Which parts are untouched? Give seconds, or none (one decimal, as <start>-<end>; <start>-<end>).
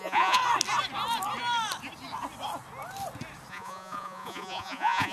0.4-3.5